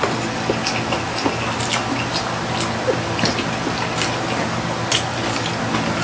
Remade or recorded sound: recorded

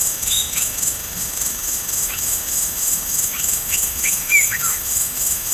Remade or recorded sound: remade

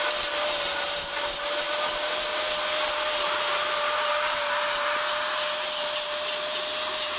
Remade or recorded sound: recorded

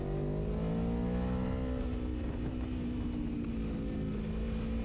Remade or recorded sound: recorded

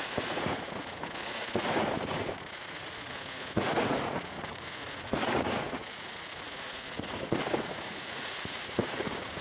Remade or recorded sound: remade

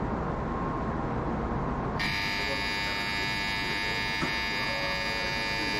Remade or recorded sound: recorded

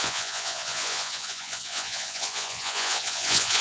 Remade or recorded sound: remade